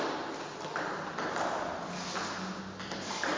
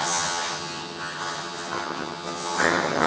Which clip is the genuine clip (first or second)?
first